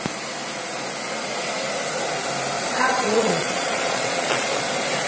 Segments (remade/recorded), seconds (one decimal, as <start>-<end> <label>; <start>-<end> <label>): 0.0-2.9 recorded; 2.9-4.6 remade; 4.6-5.1 recorded